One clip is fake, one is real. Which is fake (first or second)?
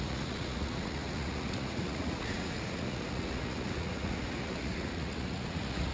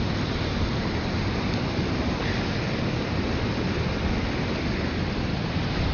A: first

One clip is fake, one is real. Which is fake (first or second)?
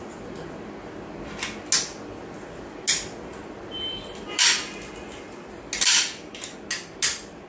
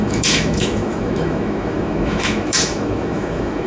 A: second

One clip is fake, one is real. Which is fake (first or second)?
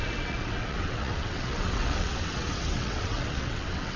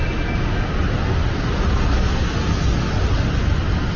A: first